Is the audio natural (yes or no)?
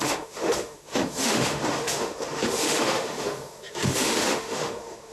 no